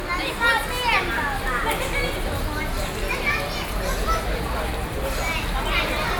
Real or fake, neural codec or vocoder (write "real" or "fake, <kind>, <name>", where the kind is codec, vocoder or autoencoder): real